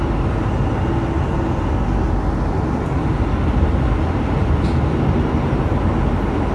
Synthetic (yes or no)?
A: no